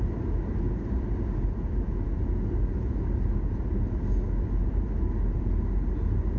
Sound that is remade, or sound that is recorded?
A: recorded